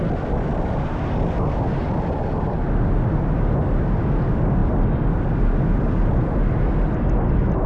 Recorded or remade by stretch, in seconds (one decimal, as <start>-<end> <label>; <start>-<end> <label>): 0.0-7.7 recorded